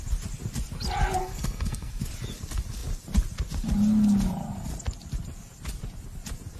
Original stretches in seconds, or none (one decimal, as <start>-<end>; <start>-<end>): 0.0-1.2; 1.9-6.6